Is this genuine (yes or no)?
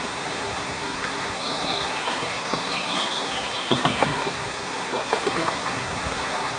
no